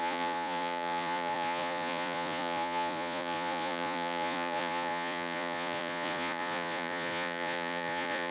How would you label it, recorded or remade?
remade